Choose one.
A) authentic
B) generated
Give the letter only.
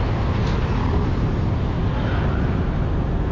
A